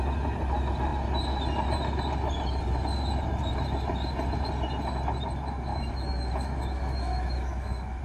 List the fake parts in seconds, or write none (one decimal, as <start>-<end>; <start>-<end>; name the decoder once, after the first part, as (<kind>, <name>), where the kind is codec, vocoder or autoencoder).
5.7-8.0 (autoencoder, DAC-VAE)

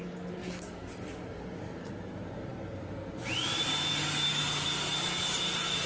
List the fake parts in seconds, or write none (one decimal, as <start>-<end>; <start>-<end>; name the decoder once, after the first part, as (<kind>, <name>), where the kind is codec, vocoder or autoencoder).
0.4-1.9 (codec, DAC)

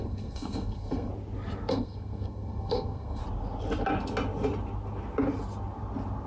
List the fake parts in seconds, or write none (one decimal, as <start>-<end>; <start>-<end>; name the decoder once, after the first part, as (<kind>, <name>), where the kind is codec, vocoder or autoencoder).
0.0-1.1 (codec, SNAC); 1.7-3.2

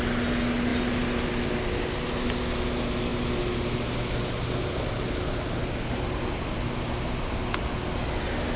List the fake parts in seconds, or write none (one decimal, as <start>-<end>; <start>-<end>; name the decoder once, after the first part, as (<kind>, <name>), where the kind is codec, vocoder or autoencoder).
none

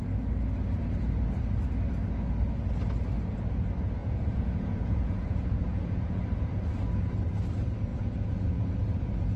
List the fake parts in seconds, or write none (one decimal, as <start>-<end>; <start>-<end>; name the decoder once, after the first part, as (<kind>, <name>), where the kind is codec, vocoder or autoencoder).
4.0-6.2 (vocoder, Vocos); 7.9-8.7

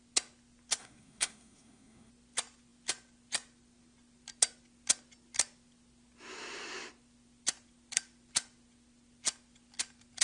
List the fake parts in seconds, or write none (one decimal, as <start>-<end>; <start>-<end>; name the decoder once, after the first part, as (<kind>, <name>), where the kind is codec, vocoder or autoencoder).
0.8-2.1 (codec, SNAC)

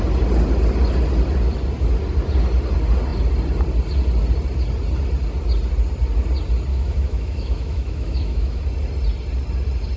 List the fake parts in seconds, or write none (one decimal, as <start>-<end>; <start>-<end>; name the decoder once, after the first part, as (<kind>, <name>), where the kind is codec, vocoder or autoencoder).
6.7-8.6 (autoencoder, DAC-VAE)